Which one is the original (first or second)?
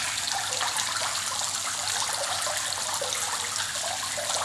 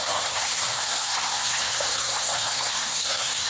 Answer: first